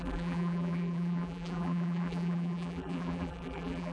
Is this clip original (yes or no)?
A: no